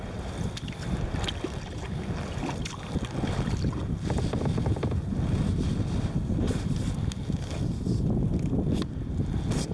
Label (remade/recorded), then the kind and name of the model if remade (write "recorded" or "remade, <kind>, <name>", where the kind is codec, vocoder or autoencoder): recorded